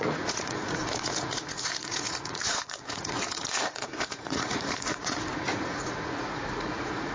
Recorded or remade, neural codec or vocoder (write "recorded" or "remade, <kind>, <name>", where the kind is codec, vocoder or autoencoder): remade, vocoder, Vocos